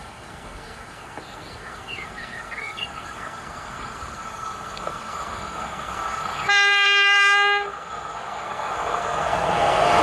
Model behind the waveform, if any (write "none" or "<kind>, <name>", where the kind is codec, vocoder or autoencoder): codec, SNAC